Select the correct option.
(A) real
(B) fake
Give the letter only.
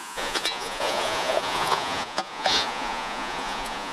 B